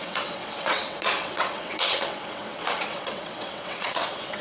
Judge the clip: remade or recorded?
remade